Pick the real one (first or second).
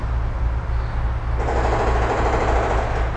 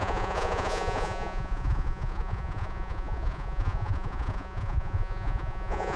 first